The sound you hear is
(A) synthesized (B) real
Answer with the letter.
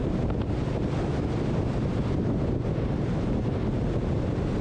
B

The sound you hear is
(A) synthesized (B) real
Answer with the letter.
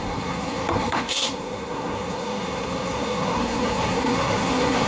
A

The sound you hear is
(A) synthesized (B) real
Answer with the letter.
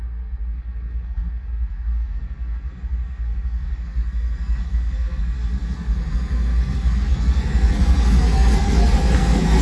A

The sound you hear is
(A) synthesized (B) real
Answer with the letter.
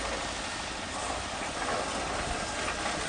B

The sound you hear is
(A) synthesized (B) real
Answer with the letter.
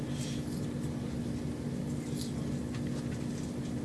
B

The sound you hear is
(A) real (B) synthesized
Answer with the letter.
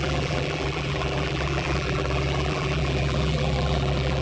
B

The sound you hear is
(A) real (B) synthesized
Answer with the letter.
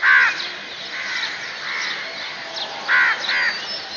A